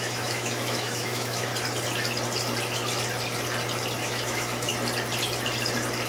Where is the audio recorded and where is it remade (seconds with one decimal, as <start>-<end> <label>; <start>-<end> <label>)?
0.0-1.5 remade; 1.5-4.0 recorded; 4.0-4.7 remade; 4.7-6.1 recorded